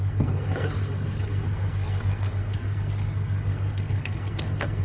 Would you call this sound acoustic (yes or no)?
no